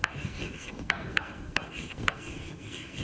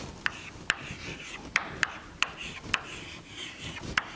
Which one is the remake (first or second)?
first